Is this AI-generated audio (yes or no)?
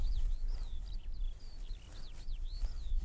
no